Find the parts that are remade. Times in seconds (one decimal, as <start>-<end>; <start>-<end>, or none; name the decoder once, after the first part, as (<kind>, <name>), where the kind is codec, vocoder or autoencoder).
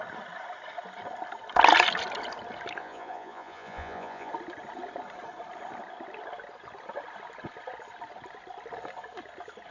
2.8-4.3 (vocoder, Vocos)